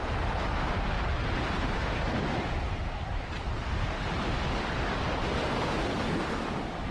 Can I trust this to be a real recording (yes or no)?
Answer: yes